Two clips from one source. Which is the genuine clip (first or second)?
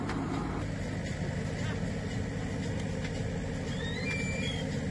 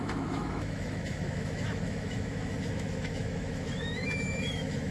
first